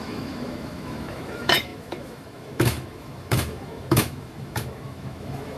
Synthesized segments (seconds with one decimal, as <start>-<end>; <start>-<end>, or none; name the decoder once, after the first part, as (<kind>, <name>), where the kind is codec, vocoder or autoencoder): 0.0-5.6 (autoencoder, DAC-VAE)